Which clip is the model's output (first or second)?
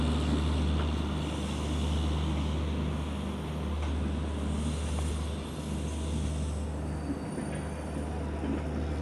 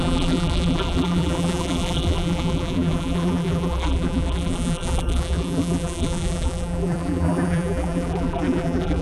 second